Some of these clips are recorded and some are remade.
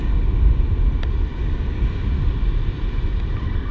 recorded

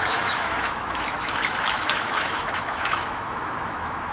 remade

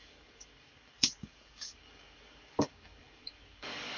remade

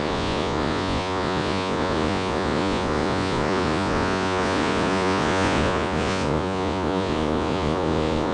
remade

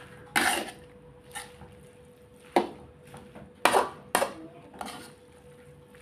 recorded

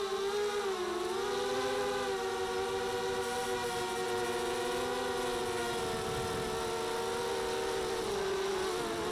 recorded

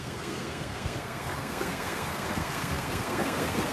remade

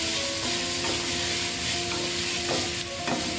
recorded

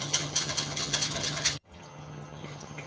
remade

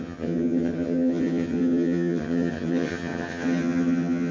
remade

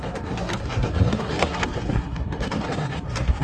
remade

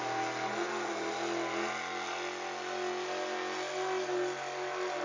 recorded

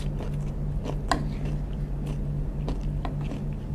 recorded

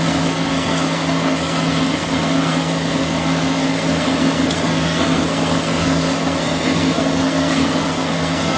remade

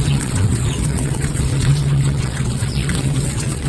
remade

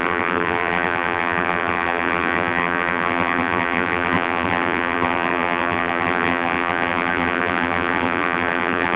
remade